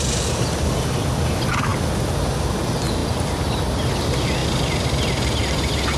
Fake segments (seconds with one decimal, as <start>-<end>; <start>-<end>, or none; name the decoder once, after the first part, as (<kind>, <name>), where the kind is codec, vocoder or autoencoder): none